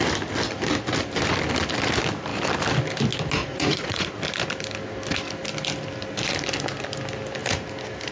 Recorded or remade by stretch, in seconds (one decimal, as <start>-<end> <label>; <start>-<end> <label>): 0.0-3.4 recorded; 3.4-4.1 remade; 4.1-8.1 recorded